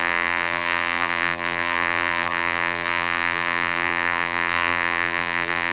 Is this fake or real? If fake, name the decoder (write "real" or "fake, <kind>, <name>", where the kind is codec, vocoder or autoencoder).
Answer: fake, vocoder, BigVGAN v2